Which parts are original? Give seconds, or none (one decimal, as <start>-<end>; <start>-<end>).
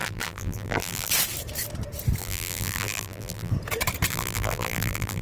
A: 1.1-2.2; 3.5-4.1